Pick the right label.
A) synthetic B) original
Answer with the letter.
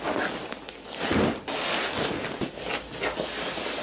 B